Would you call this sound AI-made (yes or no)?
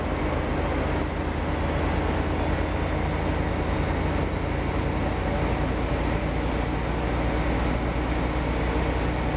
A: no